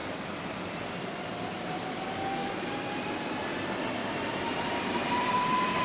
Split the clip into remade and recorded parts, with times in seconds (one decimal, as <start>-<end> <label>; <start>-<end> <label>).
0.0-2.0 remade; 2.0-2.4 recorded; 2.4-3.0 remade; 3.0-4.0 recorded; 4.0-5.8 remade